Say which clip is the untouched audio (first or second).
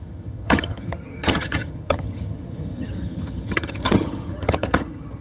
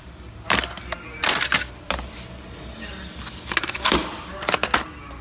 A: second